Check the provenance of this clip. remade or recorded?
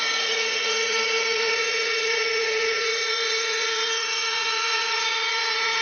remade